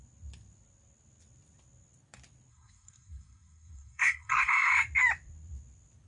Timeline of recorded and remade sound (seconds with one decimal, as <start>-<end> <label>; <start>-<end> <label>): 0.0-2.5 recorded; 2.5-4.7 remade; 4.7-6.1 recorded